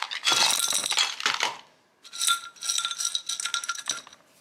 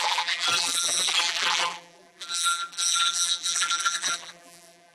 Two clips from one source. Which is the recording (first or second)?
first